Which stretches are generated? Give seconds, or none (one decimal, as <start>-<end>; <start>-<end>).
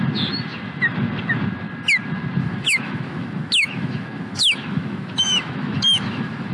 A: 2.4-6.5